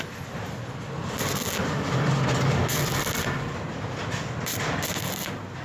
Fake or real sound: real